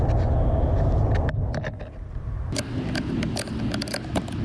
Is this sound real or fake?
real